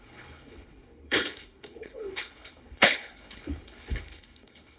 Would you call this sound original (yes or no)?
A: no